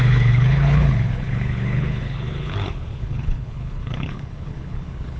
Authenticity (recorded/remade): remade